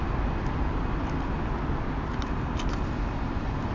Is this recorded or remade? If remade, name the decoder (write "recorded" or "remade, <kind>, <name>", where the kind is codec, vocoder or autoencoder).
recorded